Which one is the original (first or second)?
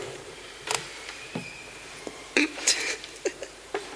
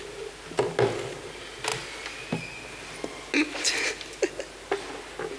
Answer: second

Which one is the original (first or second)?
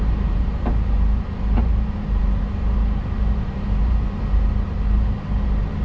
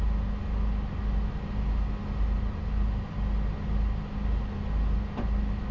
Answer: second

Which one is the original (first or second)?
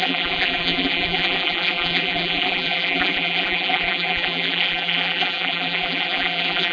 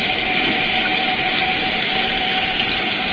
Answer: second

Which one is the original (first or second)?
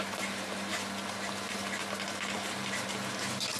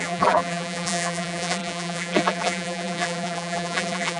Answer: first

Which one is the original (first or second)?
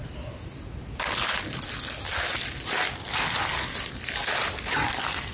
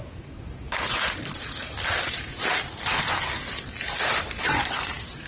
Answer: first